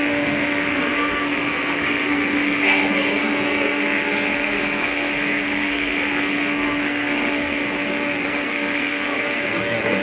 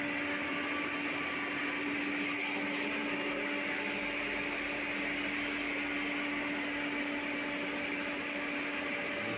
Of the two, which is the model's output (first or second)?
first